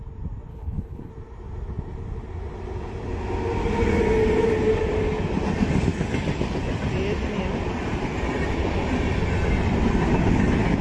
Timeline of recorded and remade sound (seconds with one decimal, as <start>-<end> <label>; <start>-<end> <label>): 0.0-0.5 recorded; 0.5-1.1 remade; 1.1-10.8 recorded